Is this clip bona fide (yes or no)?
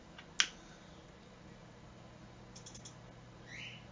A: yes